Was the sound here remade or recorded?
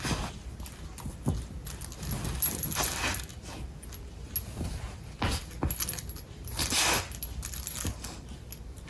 recorded